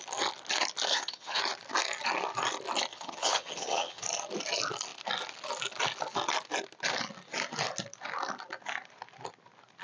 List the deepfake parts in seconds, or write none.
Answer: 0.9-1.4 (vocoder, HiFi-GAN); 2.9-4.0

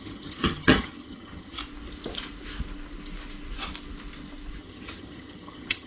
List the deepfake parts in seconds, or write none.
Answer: 0.0-1.6 (vocoder, HiFi-GAN); 4.6-5.9

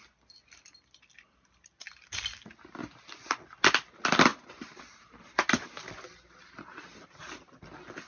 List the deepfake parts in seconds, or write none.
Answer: none

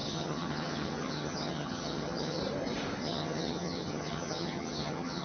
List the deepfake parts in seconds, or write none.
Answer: 0.0-2.4 (vocoder, HiFi-GAN); 3.0-5.2

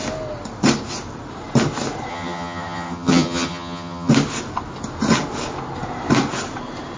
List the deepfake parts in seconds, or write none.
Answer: 2.1-4.1 (vocoder, HiFi-GAN)